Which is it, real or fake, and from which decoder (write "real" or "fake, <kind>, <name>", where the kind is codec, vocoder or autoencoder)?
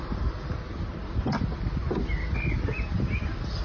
real